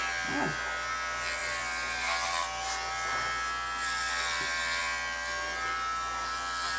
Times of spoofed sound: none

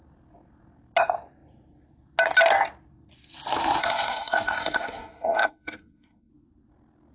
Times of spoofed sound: 3.8-6.3 (codec, SNAC)

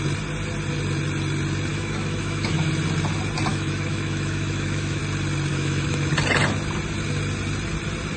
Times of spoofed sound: 1.7-2.7 (autoencoder, DAC-VAE); 3.5-5.0; 5.5-6.1

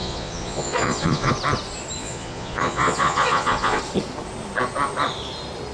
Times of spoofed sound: 0.0-1.3 (vocoder, Vocos); 2.0-3.8

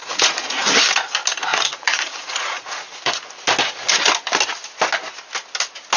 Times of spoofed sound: 0.0-0.7 (vocoder, Vocos); 1.5-3.2

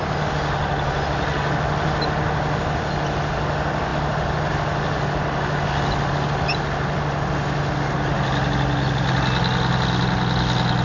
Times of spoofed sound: none